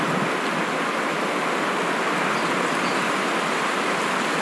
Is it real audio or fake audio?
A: real